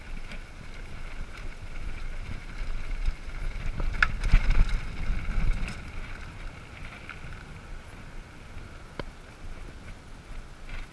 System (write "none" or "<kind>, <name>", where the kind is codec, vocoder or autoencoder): none